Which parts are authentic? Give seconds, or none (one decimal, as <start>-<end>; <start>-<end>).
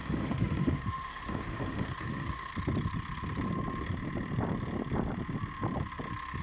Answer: 2.5-6.4